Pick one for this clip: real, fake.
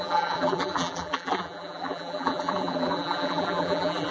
fake